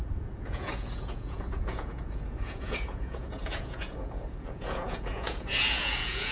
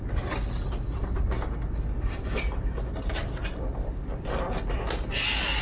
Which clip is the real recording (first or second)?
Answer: second